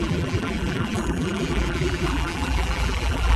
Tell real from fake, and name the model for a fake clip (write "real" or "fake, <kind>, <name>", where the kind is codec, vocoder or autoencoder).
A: fake, vocoder, BigVGAN v2